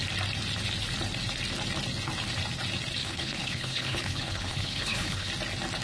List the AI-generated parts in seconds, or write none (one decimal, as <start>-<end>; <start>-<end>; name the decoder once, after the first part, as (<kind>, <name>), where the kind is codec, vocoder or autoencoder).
3.0-5.3 (codec, HILCodec)